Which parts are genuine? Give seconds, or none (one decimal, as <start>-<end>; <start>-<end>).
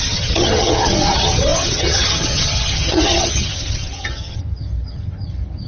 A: none